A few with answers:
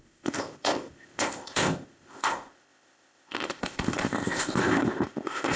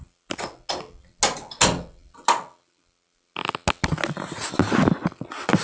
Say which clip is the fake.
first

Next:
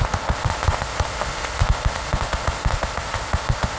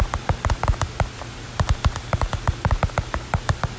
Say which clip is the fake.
first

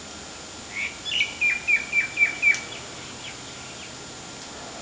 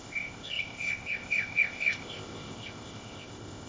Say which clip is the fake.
second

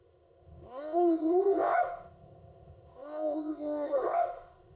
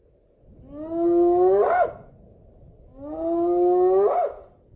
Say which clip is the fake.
first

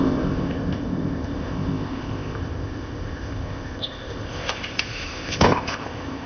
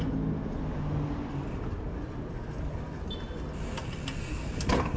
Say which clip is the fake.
first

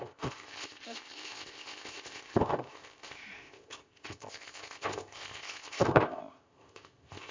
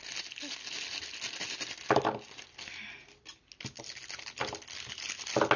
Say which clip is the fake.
first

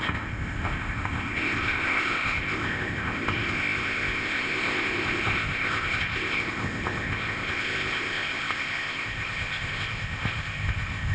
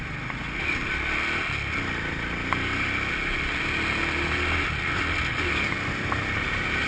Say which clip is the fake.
first